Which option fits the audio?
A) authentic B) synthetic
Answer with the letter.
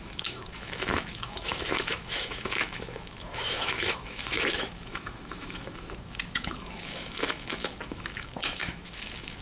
B